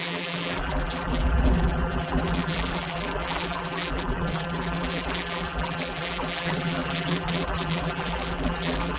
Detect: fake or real fake